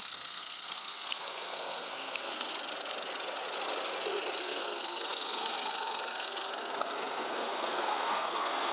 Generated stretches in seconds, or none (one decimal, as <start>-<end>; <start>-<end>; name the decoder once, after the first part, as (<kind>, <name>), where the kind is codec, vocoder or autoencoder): 0.0-2.5 (codec, SNAC); 4.4-8.7